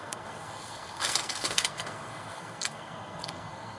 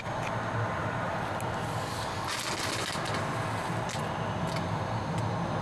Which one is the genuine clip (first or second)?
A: second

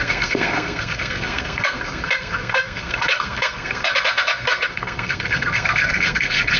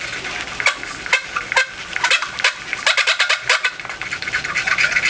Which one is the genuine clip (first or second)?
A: second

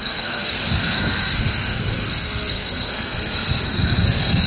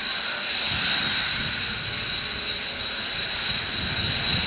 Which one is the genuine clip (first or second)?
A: second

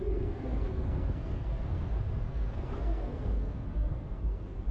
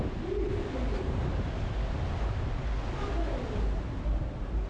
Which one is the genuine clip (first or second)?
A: second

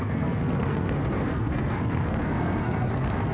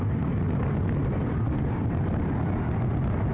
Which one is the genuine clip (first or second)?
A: second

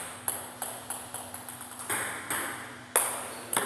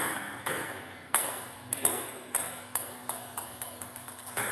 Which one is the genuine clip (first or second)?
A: first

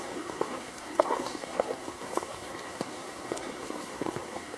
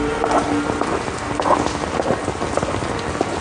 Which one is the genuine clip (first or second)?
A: second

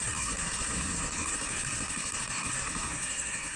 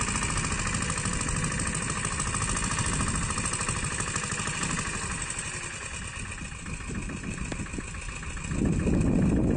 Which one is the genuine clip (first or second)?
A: second